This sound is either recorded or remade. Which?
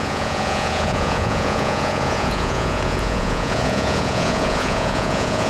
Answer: remade